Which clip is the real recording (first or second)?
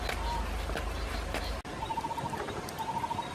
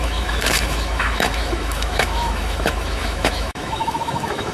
first